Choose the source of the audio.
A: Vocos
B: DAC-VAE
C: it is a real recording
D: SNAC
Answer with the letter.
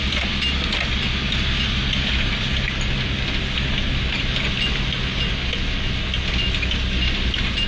C